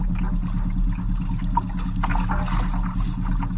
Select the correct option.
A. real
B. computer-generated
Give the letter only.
A